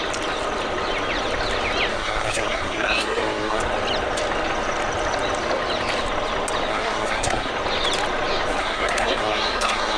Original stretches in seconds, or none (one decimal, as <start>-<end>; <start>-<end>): 0.0-1.9; 3.6-6.7; 7.5-8.6